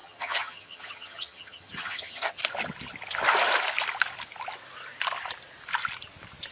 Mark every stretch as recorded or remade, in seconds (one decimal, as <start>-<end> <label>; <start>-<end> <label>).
0.0-2.4 remade; 2.4-6.5 recorded